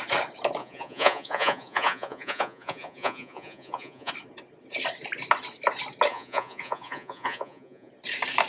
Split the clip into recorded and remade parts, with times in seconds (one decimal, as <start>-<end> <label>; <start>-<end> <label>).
0.0-0.6 recorded; 0.6-4.1 remade; 4.1-6.1 recorded; 6.1-7.9 remade; 7.9-8.5 recorded